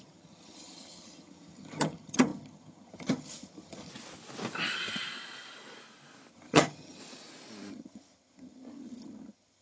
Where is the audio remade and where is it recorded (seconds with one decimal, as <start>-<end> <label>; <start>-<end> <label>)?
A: 0.0-3.9 remade; 3.9-6.3 recorded; 6.3-7.0 remade; 7.0-7.7 recorded; 7.7-9.6 remade